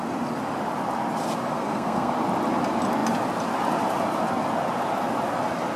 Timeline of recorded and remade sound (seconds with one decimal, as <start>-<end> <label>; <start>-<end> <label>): 0.0-1.5 recorded; 1.5-2.1 remade; 2.1-5.8 recorded